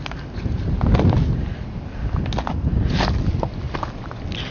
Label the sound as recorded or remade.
recorded